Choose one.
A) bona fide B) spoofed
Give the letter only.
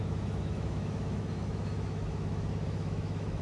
B